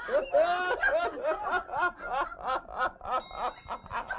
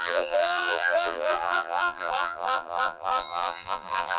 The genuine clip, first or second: first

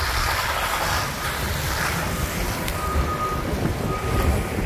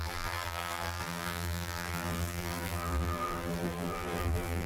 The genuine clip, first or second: first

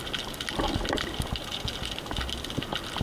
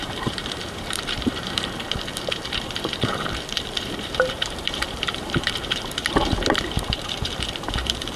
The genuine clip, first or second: first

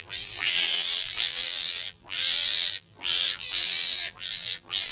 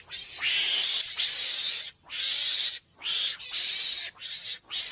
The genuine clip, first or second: second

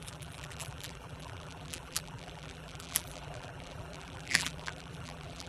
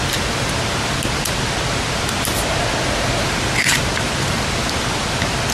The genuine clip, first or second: second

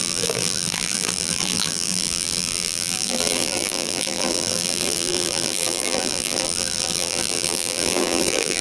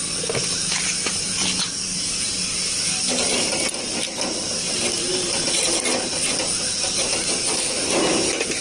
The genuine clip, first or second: second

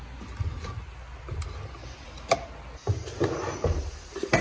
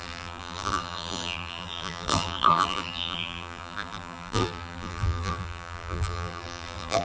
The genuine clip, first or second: first